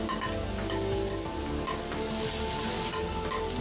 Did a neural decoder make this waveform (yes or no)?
no